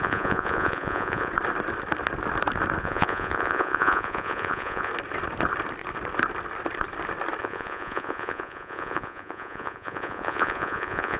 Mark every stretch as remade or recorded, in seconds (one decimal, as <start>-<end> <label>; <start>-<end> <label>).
0.0-1.3 remade; 1.3-2.8 recorded; 2.8-4.9 remade; 4.9-7.4 recorded; 7.4-11.2 remade